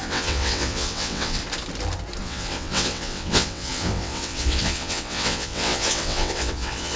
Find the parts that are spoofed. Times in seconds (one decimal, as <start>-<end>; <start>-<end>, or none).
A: 0.0-1.4; 2.2-7.0